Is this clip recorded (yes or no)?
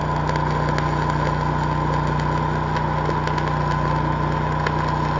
yes